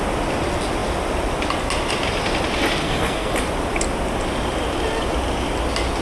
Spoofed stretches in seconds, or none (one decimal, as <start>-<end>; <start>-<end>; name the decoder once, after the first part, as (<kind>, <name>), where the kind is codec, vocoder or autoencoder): 2.8-3.3 (codec, SNAC)